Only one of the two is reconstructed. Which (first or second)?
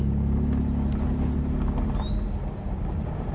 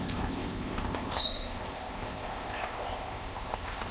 second